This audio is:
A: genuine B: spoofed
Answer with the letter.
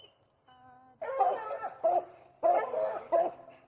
A